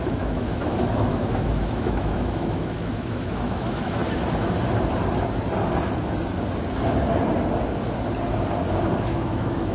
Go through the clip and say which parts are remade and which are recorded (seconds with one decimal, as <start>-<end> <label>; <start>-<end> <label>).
0.0-4.0 remade; 4.0-9.0 recorded; 9.0-9.7 remade